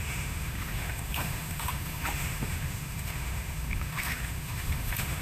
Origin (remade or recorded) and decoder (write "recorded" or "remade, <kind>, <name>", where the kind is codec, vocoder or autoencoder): remade, autoencoder, DAC-VAE